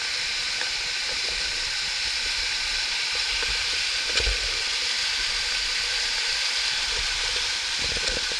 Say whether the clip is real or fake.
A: real